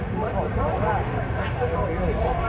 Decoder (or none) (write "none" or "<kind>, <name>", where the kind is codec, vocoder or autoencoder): none